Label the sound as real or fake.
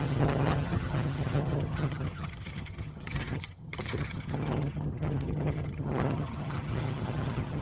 fake